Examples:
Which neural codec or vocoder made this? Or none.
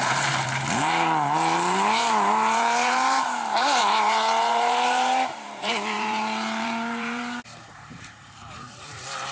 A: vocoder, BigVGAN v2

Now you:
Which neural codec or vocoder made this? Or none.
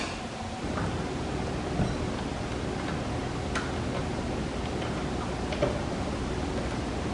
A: none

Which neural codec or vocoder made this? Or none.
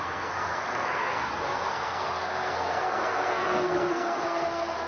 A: codec, SNAC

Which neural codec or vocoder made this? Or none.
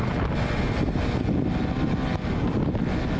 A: none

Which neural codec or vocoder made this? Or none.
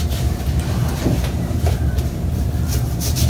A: vocoder, BigVGAN v2